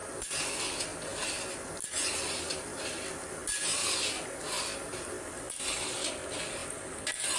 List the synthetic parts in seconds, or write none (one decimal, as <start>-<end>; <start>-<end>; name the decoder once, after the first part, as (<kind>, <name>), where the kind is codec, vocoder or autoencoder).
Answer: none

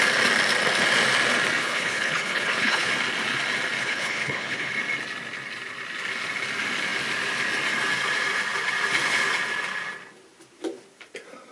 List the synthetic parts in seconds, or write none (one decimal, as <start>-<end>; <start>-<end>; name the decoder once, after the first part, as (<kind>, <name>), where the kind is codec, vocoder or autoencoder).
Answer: 1.6-2.9 (codec, HILCodec); 3.8-4.7

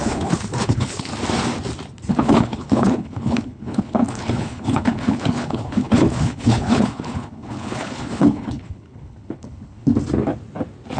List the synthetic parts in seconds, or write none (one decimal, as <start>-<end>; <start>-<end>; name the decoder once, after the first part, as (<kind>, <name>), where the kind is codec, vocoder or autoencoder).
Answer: 0.0-1.1 (codec, HILCodec); 2.1-9.9

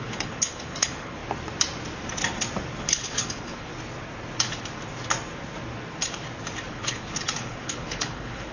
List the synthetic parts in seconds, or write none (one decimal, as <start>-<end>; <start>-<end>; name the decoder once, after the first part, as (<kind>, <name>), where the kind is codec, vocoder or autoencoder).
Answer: 0.0-1.2 (codec, HILCodec); 2.8-3.7; 6.7-8.5

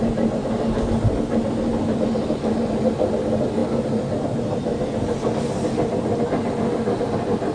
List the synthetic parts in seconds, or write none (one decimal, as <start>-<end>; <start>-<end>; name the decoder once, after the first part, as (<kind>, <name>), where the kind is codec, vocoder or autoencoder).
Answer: none

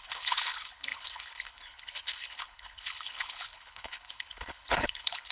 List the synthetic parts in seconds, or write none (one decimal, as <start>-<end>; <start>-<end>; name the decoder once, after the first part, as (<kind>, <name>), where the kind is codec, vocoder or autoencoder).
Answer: 0.0-5.3 (codec, HILCodec)

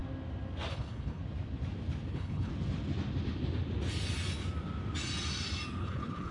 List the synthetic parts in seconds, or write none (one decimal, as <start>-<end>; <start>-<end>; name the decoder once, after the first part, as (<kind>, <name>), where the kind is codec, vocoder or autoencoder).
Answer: 0.7-1.2 (codec, HILCodec); 2.1-2.5; 5.8-6.3

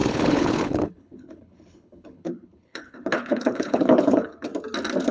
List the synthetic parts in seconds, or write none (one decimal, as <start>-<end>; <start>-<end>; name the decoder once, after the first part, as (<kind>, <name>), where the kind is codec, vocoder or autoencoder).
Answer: 0.0-4.5 (codec, HILCodec)